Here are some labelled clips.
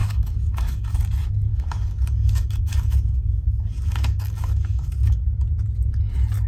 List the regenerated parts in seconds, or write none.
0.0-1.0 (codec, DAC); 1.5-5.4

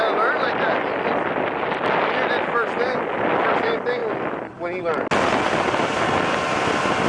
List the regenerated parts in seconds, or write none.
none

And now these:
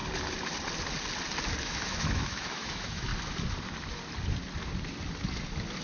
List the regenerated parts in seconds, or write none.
1.6-3.1 (autoencoder, DAC-VAE)

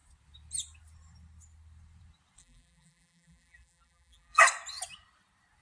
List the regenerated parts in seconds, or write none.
2.4-4.4 (vocoder, BigVGAN v2)

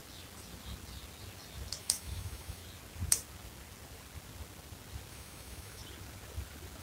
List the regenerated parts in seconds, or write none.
1.8-2.6 (autoencoder, DAC-VAE); 5.1-5.8

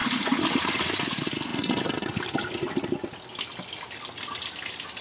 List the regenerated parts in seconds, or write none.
none

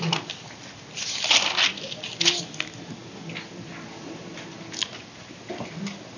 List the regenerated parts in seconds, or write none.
none